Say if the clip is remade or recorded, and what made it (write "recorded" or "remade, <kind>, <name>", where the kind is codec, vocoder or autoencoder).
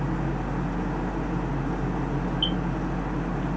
recorded